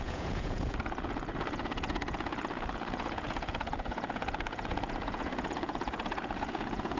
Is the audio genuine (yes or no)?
no